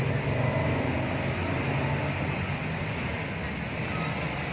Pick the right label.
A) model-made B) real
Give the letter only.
B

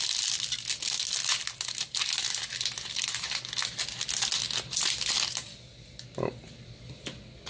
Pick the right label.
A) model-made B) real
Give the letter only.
B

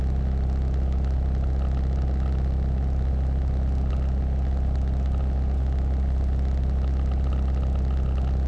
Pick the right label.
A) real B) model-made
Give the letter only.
A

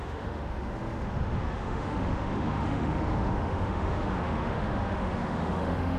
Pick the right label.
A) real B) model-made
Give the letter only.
B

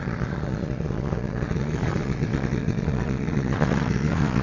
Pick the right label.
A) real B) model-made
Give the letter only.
B